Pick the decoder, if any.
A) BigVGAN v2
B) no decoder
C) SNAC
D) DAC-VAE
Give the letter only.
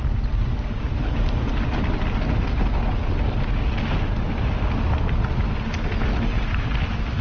B